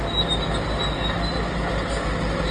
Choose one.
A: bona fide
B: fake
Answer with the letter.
A